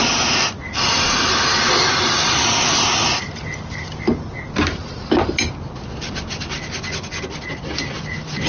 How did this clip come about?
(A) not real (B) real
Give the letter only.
B